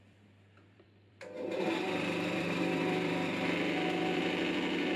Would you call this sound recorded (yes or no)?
no